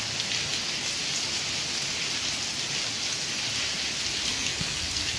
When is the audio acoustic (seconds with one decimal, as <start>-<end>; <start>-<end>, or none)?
0.0-4.3